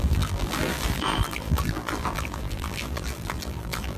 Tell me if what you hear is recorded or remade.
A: remade